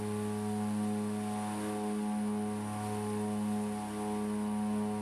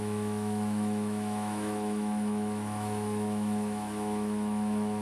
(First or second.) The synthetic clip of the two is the second